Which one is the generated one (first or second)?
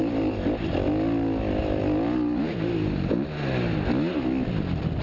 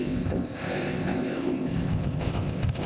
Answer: second